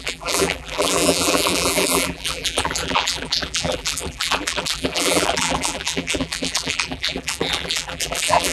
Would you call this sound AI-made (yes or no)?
yes